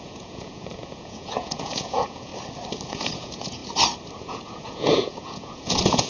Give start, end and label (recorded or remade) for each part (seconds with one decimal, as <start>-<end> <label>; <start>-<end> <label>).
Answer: 0.0-2.3 remade; 2.3-2.9 recorded; 2.9-3.6 remade; 3.6-4.2 recorded; 4.2-6.1 remade